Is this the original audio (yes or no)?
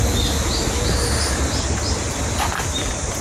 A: yes